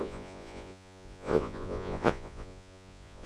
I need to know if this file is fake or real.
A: fake